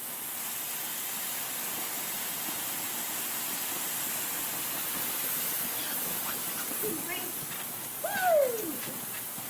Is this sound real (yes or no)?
yes